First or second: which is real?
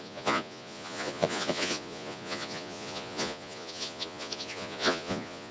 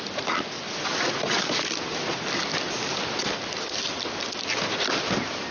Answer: second